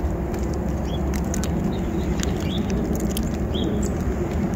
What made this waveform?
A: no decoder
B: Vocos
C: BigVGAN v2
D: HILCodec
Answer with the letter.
A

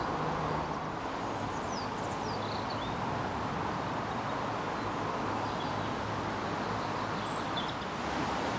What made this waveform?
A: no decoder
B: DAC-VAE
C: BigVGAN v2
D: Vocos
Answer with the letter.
A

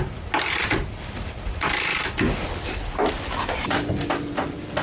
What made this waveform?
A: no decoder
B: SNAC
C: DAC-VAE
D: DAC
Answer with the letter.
A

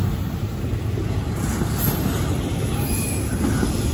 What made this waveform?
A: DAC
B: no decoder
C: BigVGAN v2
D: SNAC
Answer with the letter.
B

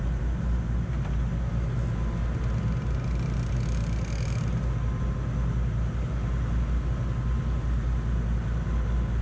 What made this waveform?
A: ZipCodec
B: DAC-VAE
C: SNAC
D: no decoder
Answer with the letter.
D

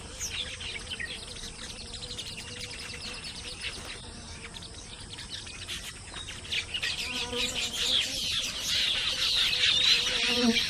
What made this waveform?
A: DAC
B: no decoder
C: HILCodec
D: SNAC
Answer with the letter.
B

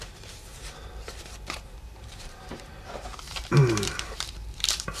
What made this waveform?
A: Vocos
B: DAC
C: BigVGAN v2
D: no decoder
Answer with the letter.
C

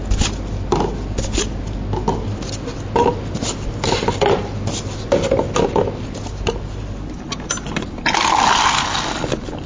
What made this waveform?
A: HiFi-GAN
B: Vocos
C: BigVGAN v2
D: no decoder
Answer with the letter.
D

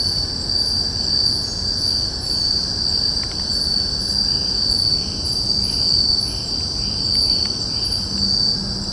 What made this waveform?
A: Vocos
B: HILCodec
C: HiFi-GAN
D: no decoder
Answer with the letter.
D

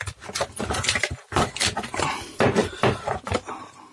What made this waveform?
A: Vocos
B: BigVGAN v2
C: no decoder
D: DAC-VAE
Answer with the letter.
C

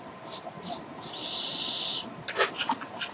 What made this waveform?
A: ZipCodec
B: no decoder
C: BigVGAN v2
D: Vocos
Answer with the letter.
C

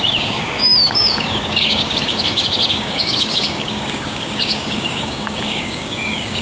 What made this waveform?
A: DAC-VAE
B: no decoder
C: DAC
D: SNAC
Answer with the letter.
C